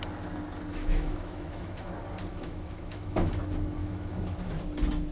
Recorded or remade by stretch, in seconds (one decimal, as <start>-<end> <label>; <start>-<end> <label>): 0.0-0.7 recorded; 0.7-1.9 remade; 1.9-2.3 recorded; 2.3-3.4 remade; 3.4-3.8 recorded; 3.8-4.5 remade; 4.5-5.1 recorded